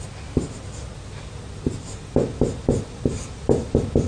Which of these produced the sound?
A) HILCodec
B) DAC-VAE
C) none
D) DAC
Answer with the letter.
C